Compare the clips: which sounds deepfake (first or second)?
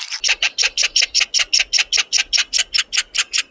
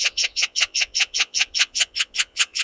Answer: second